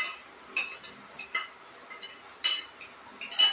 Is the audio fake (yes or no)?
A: no